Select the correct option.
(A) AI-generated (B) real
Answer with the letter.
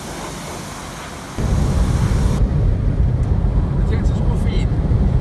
B